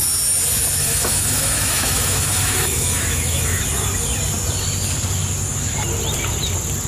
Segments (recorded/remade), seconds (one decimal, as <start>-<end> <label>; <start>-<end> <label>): 0.0-0.8 recorded; 0.8-3.6 remade; 3.6-6.9 recorded